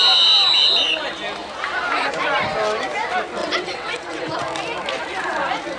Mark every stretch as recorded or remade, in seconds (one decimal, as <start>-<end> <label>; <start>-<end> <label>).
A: 0.0-3.4 recorded; 3.4-4.4 remade; 4.4-5.8 recorded